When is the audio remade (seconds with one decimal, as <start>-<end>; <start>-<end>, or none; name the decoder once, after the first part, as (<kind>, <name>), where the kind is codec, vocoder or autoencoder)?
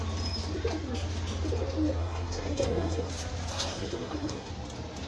2.0-3.1 (codec, SNAC); 3.5-4.5